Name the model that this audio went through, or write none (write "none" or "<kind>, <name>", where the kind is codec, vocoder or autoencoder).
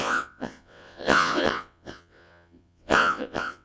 vocoder, WaveNeXt